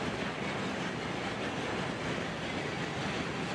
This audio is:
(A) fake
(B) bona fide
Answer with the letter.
B